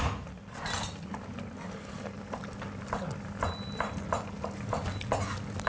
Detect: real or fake real